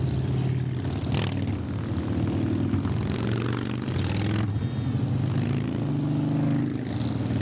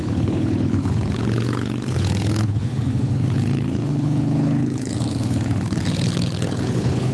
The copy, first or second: second